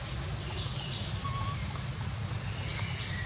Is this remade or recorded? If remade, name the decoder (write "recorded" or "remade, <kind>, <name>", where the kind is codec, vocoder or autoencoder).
recorded